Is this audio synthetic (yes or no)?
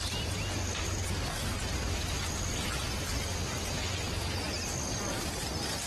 no